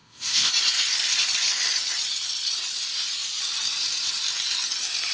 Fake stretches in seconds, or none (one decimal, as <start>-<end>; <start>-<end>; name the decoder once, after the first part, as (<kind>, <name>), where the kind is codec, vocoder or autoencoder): 0.0-0.5 (codec, ZipCodec)